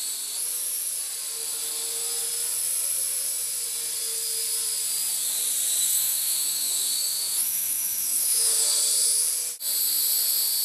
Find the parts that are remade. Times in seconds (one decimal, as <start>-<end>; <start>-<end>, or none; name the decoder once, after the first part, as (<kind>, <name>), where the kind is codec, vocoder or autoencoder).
5.8-8.7 (autoencoder, DAC-VAE)